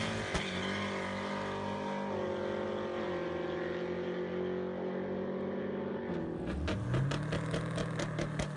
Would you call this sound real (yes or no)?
yes